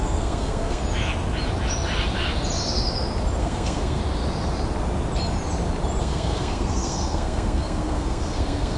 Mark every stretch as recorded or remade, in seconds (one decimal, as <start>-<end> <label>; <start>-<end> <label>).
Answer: 0.0-0.8 remade; 0.8-3.4 recorded; 3.4-4.0 remade; 4.0-6.0 recorded; 6.0-8.8 remade